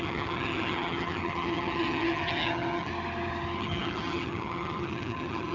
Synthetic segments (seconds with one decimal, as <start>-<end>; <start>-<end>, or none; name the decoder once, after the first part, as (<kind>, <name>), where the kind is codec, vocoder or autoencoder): 0.0-2.9 (vocoder, HiFi-GAN); 3.6-5.5